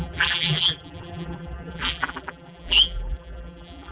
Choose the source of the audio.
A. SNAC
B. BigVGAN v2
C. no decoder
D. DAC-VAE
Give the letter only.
B